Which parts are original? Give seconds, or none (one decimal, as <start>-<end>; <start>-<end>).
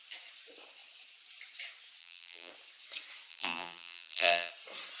0.0-2.0; 2.5-3.3; 4.5-5.0